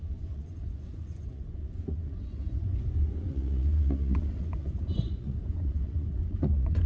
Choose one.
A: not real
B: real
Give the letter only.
A